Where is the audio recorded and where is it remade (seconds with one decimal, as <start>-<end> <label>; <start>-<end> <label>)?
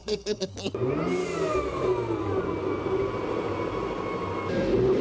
0.0-0.5 remade; 0.5-5.0 recorded